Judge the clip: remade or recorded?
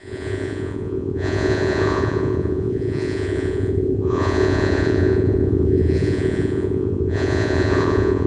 remade